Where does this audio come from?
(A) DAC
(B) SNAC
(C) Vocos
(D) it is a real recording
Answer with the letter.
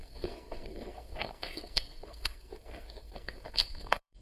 B